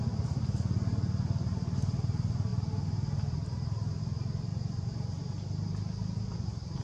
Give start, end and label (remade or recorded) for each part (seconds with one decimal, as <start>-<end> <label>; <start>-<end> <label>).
0.0-6.8 recorded